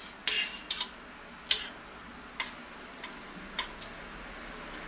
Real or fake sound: real